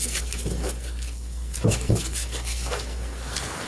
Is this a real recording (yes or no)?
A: no